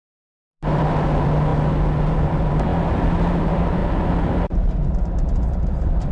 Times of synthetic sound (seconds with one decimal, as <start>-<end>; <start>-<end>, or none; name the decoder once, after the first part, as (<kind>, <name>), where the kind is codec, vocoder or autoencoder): 0.0-1.5 (vocoder, BigVGAN v2); 2.1-6.1